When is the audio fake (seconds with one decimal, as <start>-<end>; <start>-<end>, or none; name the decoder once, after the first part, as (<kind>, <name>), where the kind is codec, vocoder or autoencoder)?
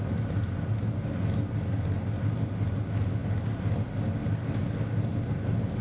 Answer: none